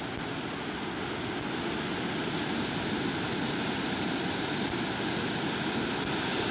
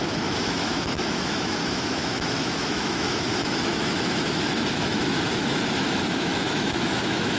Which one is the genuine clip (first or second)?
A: first